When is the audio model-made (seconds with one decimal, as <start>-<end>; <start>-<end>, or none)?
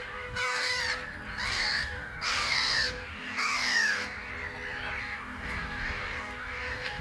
0.0-0.8; 1.5-4.3; 5.0-7.0